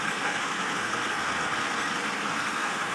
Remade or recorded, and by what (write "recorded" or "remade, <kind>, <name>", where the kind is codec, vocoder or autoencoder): remade, codec, SNAC